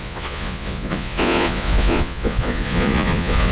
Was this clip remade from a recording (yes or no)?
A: yes